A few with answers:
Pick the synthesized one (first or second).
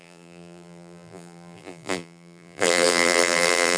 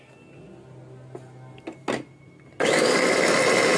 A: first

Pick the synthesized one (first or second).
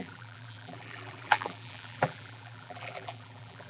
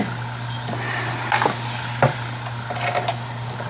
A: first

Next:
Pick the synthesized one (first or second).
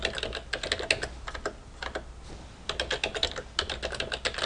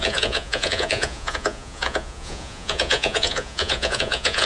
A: second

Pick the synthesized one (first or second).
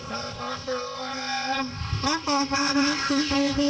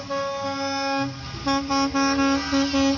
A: first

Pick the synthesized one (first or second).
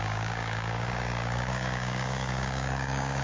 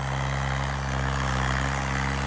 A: first